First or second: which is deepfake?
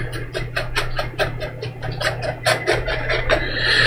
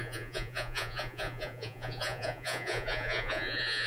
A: second